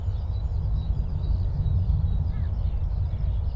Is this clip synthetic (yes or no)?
no